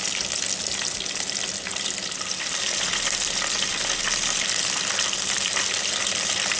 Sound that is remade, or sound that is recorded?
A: recorded